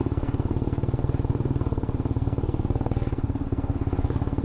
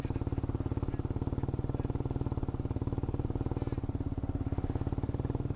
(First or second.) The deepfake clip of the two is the first